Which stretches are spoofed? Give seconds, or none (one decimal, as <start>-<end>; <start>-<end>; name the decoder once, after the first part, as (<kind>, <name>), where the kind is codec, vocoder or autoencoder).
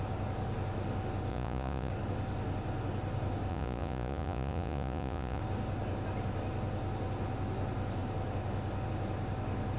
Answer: 1.3-1.9 (vocoder, Vocos); 3.5-5.4